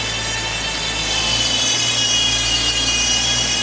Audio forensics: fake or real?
real